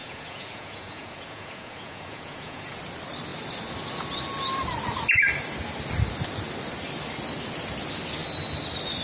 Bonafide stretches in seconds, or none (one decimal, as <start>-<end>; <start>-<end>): 2.8-9.0